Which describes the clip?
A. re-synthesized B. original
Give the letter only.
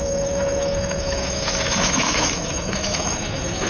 A